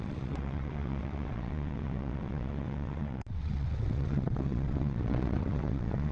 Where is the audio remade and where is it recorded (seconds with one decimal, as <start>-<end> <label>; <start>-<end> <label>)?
0.0-6.1 remade